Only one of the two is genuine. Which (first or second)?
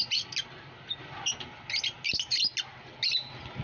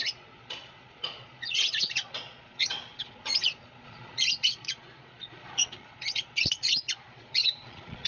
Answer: first